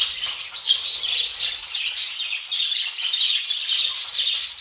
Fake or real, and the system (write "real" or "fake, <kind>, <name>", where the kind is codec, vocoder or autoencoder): real